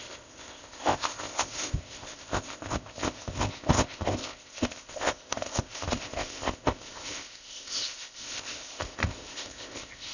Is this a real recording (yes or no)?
no